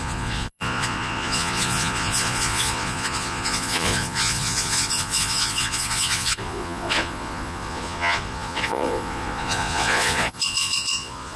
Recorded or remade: remade